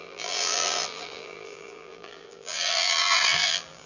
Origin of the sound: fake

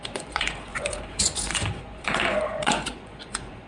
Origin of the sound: fake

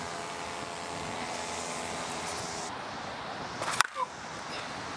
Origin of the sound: real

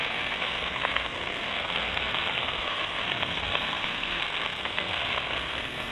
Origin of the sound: fake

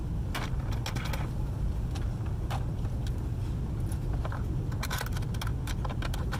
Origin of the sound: real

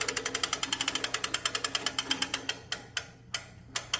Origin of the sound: real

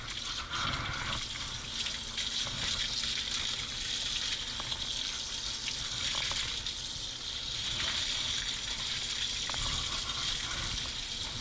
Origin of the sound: real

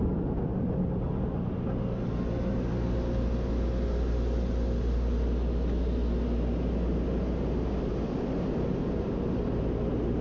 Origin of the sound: real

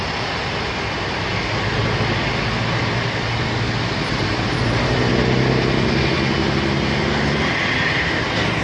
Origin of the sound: real